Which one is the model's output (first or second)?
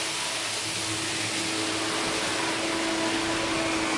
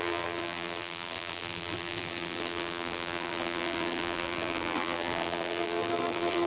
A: second